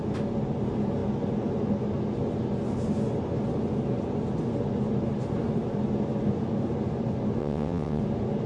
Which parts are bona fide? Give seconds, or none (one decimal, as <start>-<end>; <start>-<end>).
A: 0.0-7.4; 8.0-8.5